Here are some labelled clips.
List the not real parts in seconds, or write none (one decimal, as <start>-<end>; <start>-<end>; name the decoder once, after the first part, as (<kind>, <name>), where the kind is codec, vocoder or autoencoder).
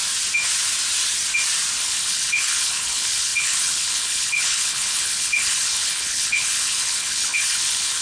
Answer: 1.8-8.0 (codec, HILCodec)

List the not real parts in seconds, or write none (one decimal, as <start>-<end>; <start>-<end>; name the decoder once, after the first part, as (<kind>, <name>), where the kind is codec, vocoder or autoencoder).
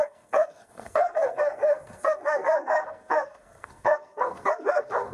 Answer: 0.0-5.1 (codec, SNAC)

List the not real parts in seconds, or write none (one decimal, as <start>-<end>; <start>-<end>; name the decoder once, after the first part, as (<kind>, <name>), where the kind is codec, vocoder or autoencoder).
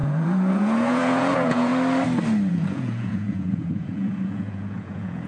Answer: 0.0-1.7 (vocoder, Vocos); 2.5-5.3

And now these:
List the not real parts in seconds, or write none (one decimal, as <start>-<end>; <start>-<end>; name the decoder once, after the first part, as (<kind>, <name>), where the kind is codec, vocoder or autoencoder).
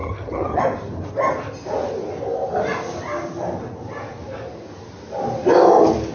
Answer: 0.0-0.6 (vocoder, HiFi-GAN)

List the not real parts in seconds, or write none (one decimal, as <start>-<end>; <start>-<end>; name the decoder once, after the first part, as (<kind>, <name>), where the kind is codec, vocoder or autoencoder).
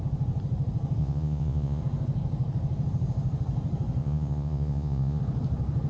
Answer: 1.0-1.8 (vocoder, Vocos); 4.0-5.2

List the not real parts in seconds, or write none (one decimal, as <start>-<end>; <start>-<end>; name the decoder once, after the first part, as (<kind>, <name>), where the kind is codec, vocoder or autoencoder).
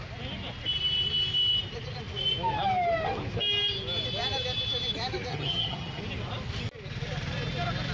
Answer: 5.3-6.0 (vocoder, HiFi-GAN)